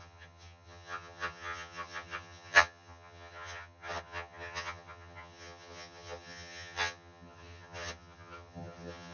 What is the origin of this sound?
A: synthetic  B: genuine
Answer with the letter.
A